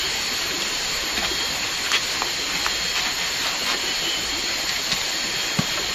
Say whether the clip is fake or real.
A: real